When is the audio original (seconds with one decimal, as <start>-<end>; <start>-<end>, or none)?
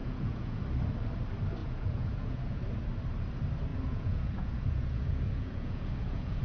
0.6-1.6; 2.6-3.7